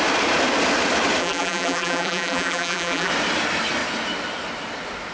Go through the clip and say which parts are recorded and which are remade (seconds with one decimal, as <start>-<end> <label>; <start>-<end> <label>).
0.0-1.2 recorded; 1.2-3.1 remade; 3.1-5.1 recorded